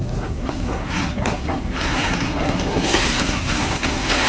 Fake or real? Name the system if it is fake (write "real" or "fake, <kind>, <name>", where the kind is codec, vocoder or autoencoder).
fake, codec, SNAC